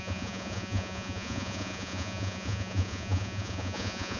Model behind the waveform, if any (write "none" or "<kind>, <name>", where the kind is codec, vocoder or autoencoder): vocoder, Vocos